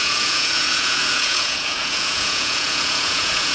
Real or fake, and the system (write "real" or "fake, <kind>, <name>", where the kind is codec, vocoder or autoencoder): fake, vocoder, Vocos